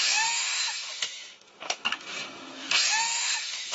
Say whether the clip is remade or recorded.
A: remade